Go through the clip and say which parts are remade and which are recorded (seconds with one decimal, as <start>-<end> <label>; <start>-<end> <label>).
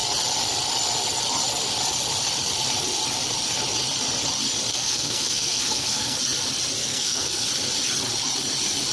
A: 0.0-4.7 recorded; 4.7-6.2 remade; 6.2-6.8 recorded; 6.8-7.5 remade; 7.5-8.9 recorded